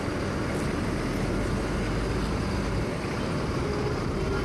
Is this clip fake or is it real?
real